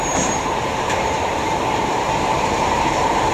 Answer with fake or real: fake